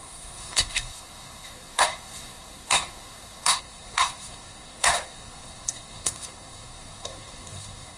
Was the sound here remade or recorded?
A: remade